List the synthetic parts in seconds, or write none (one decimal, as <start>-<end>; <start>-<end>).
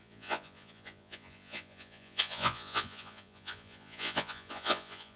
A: 0.0-5.2